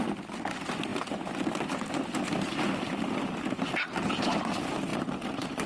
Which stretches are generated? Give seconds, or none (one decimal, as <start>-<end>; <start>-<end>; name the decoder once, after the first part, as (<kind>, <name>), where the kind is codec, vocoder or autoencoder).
none